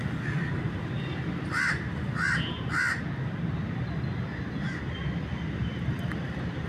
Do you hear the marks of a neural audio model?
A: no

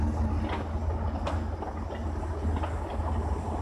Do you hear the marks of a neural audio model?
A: no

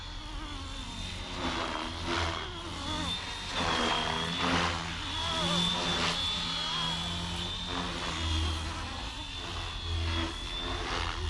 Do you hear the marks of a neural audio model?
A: no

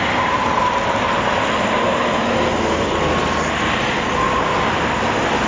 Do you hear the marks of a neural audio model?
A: no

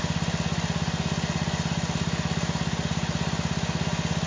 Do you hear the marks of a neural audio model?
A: no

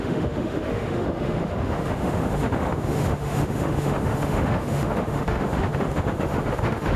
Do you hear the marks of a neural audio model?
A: yes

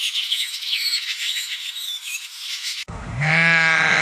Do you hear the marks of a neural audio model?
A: yes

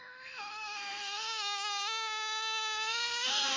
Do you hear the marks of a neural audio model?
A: yes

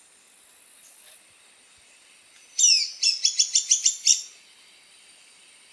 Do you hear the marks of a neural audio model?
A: no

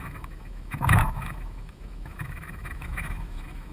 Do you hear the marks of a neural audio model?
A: yes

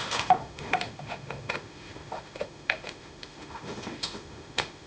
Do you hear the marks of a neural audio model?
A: yes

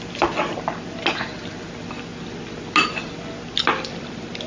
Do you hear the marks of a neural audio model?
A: no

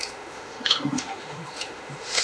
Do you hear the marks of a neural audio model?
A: yes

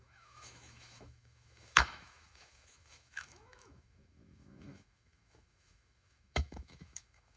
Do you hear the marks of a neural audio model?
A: yes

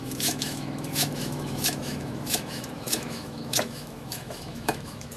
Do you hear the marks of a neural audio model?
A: yes